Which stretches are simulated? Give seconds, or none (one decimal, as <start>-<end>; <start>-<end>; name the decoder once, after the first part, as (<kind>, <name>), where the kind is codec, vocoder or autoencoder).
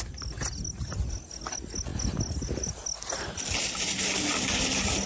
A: none